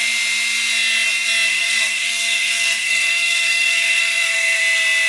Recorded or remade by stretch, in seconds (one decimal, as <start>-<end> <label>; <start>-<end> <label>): 0.0-1.5 recorded; 1.5-4.6 remade; 4.6-5.1 recorded